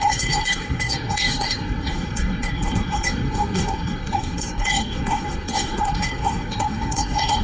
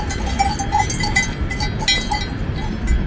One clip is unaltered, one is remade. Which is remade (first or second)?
first